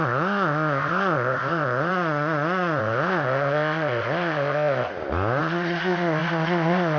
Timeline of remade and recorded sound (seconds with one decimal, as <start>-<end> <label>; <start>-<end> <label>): 0.0-1.9 remade; 1.9-2.8 recorded; 2.8-4.9 remade; 4.9-5.4 recorded; 5.4-7.0 remade